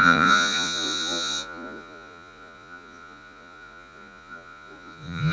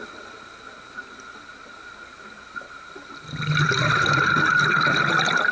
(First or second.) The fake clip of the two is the first